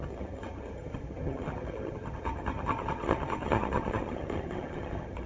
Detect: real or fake fake